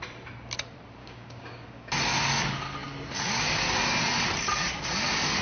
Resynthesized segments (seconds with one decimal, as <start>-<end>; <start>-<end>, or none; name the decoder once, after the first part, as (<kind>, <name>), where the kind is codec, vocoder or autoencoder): 1.0-1.9 (codec, DAC)